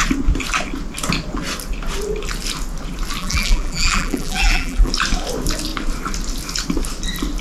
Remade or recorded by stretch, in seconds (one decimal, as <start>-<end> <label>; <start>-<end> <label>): 0.0-3.2 recorded; 3.2-4.9 remade; 4.9-7.4 recorded